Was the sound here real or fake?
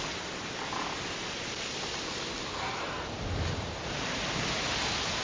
real